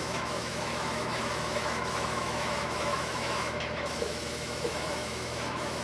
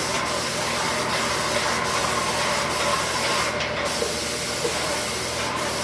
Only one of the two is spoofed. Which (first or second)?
first